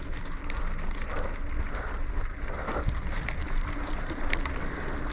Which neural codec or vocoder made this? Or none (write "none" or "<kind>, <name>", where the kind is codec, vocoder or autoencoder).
none